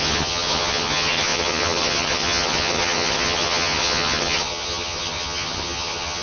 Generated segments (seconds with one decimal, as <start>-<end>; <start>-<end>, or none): 0.0-6.2